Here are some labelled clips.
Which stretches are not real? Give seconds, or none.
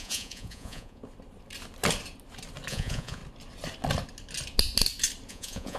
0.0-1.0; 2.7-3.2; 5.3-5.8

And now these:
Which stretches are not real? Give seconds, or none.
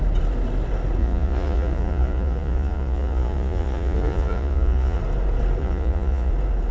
1.0-5.0; 5.6-6.3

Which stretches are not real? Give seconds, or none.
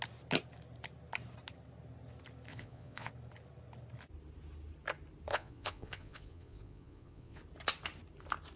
2.5-3.1; 5.3-7.4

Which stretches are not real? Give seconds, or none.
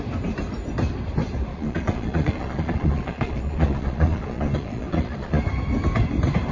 1.5-5.4